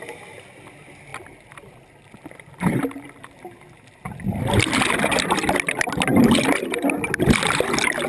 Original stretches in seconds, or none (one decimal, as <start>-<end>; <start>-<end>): 0.0-8.1